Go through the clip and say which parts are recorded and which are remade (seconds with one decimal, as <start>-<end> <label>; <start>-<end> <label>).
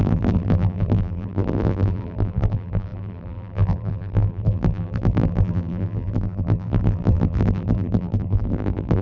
0.0-9.0 remade